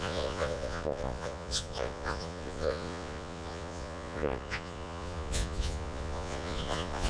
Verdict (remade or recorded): remade